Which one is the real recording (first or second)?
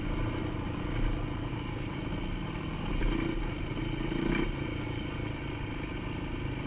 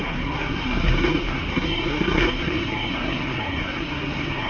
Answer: first